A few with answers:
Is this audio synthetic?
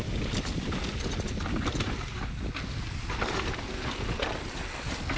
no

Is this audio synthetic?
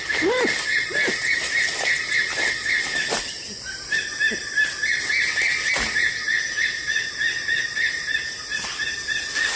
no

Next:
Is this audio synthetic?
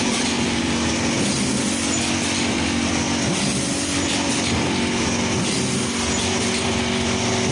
no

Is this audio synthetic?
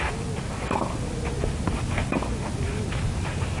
no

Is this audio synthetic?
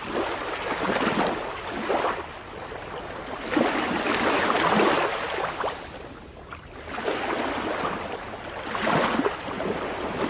no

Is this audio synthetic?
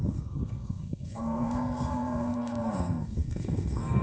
yes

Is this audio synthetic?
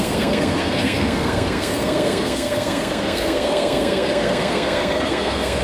yes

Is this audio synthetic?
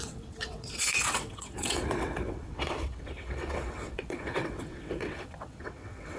yes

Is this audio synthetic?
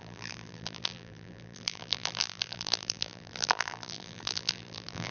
yes